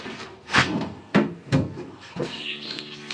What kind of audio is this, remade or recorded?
remade